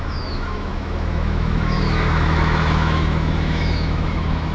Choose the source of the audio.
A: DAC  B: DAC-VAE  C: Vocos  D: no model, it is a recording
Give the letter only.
B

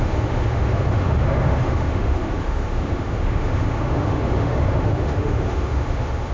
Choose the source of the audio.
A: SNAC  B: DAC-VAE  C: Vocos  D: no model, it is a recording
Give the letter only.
B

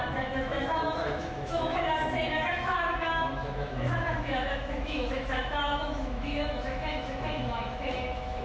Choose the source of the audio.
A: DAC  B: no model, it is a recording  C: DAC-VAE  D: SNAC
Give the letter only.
C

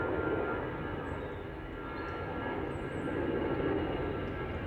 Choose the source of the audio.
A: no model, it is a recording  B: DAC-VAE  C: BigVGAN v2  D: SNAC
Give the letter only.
A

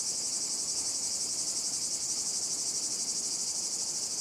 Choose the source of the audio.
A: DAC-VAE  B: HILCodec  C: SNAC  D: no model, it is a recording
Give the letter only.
D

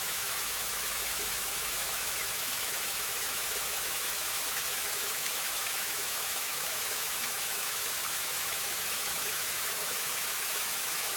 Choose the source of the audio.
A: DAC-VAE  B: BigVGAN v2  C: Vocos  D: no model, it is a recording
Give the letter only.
A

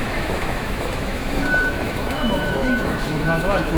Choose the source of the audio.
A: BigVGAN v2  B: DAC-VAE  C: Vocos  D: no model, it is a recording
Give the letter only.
B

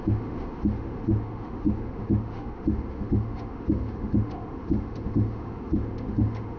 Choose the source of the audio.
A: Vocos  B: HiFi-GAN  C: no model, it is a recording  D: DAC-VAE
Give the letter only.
D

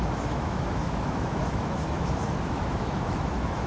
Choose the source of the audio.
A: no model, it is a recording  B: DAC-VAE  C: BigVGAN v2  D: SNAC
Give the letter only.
B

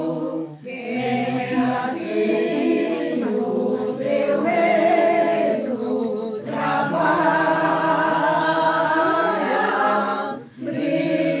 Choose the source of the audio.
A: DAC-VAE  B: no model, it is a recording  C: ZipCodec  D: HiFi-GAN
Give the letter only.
A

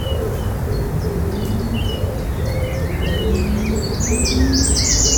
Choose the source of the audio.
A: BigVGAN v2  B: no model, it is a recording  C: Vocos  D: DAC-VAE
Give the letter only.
B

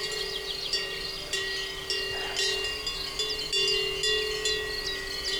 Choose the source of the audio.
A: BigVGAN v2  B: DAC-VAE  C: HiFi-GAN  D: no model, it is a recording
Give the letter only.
D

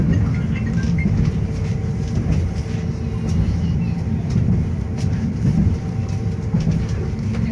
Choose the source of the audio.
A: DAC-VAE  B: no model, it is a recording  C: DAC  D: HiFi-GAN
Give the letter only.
B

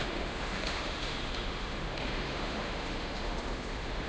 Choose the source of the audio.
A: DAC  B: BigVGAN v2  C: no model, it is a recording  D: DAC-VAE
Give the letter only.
D